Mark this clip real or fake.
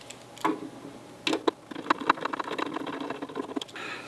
real